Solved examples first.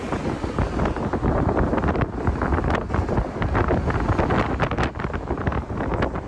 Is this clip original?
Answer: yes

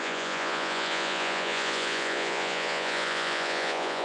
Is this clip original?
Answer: no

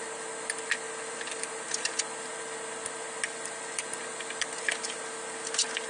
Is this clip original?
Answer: yes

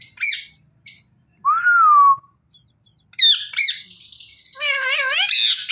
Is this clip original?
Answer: yes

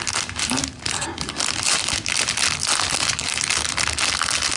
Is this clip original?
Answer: yes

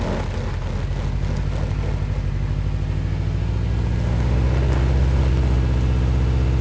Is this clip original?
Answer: yes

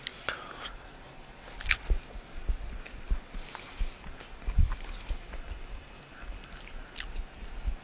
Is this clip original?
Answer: yes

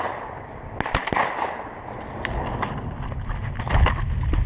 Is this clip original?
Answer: yes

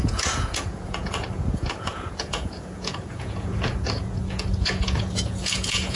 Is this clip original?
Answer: no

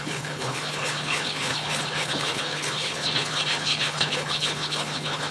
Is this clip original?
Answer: no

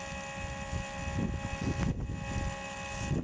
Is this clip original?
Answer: yes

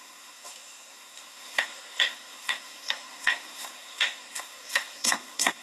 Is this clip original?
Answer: no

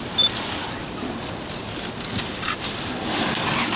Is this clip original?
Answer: yes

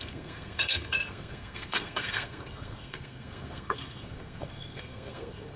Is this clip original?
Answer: no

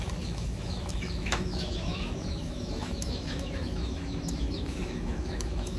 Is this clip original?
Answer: no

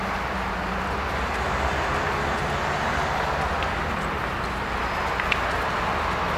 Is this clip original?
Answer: yes